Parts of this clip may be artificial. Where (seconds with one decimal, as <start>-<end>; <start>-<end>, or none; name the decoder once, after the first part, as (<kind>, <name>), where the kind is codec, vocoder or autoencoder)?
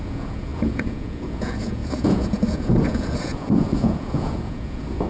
0.0-5.1 (vocoder, Vocos)